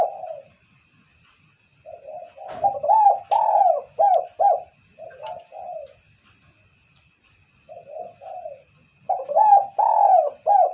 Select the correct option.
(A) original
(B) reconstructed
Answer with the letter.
A